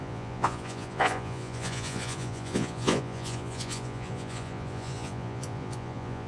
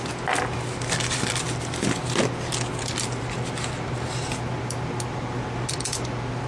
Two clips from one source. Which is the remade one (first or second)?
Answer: first